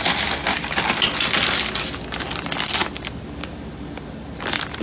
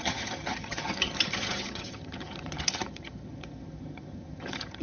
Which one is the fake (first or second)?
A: second